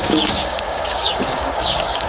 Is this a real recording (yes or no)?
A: no